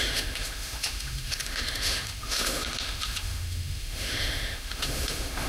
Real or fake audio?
fake